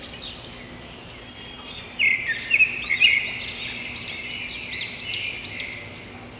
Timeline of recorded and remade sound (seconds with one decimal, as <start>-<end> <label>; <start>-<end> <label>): 0.0-1.2 recorded; 1.2-1.8 remade; 1.8-6.4 recorded